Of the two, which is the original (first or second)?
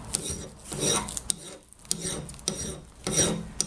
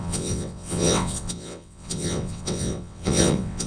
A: first